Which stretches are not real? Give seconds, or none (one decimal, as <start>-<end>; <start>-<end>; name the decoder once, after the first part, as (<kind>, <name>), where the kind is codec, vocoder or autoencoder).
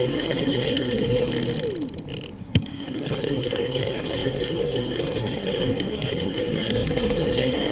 0.0-1.3 (codec, SNAC); 2.4-7.7